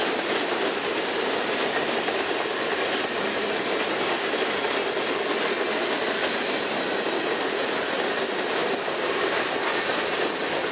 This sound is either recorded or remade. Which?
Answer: recorded